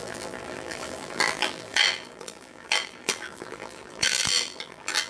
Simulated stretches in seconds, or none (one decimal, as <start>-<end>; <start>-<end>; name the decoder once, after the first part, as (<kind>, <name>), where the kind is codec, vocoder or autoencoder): 0.0-5.1 (vocoder, BigVGAN v2)